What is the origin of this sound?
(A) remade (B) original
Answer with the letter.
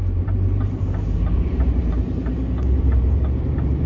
A